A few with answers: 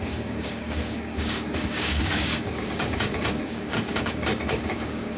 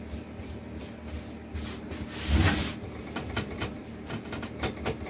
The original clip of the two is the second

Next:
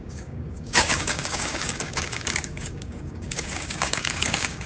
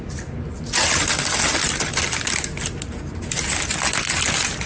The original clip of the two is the second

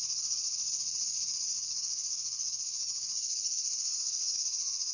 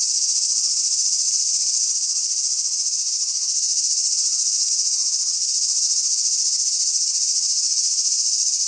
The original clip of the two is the second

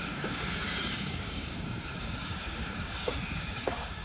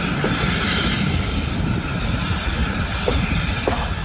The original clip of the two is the second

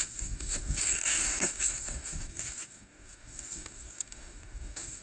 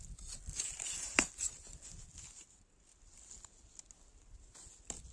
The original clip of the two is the second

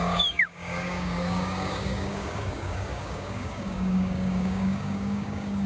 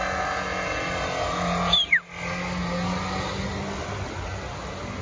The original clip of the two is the second